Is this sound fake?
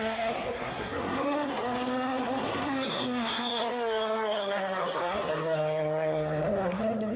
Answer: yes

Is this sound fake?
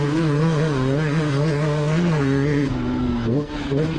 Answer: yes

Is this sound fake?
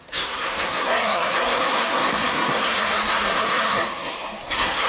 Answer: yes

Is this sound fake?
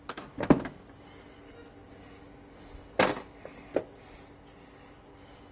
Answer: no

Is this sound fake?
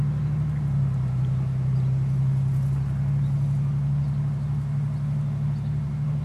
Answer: no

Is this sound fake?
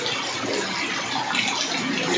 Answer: no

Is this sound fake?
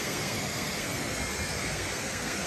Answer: yes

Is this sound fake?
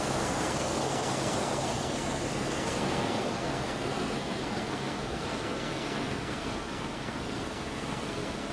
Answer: yes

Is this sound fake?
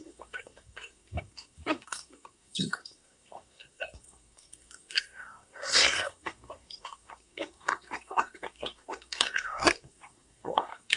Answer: yes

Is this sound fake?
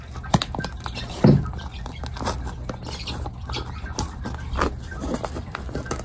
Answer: no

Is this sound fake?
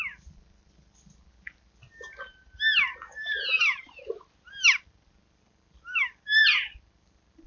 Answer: no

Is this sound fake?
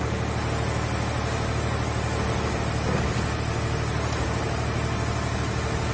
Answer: no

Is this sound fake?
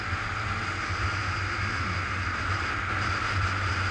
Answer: no